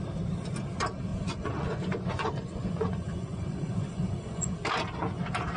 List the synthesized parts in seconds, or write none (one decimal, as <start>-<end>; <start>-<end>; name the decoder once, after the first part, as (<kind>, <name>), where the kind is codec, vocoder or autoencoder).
1.1-4.5 (vocoder, Vocos)